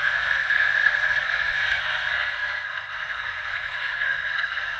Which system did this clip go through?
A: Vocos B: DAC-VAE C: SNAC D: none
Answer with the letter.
C